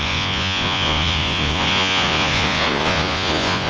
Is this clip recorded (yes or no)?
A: no